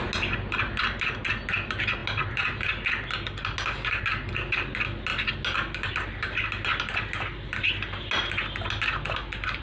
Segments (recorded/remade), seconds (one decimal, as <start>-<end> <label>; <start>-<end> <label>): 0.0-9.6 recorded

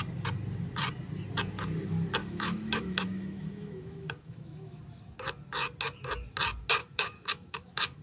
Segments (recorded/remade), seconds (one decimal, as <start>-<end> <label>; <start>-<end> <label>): 0.0-2.2 recorded; 2.2-4.8 remade; 4.8-6.8 recorded; 6.8-8.0 remade

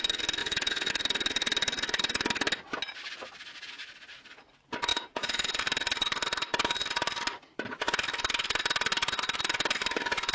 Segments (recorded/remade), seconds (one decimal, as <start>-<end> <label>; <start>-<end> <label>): 0.0-0.4 recorded; 0.4-0.9 remade; 0.9-4.9 recorded; 4.9-5.6 remade; 5.6-10.3 recorded